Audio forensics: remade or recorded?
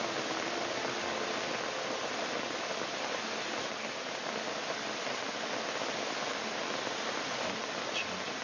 recorded